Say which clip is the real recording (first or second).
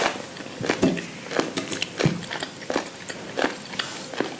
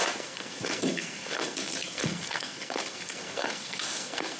first